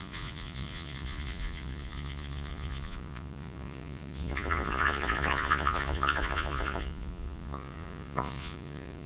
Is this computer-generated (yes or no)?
yes